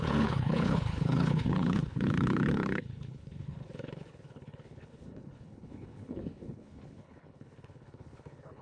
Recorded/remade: remade